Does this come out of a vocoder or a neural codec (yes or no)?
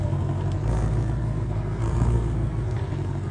yes